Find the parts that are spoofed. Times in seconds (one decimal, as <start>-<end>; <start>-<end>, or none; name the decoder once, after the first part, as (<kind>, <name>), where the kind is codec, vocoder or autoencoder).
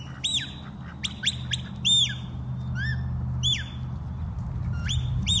none